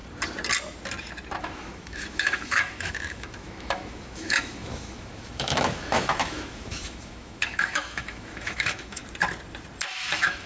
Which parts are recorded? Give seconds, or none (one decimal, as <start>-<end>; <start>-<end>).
0.0-1.4; 9.0-10.0